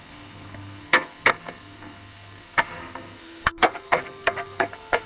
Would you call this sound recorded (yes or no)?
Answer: no